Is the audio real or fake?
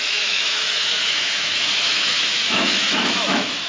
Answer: fake